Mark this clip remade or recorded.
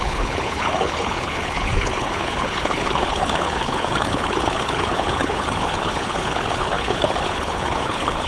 remade